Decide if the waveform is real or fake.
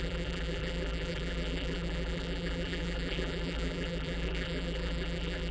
fake